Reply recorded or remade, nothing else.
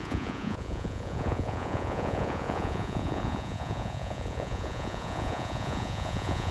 remade